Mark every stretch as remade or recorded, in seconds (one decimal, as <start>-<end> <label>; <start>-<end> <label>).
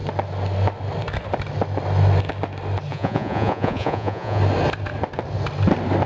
0.0-2.9 recorded; 2.9-4.4 remade; 4.4-6.1 recorded